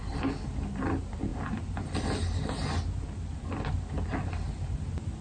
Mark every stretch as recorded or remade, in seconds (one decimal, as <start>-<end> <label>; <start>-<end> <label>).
0.0-5.2 recorded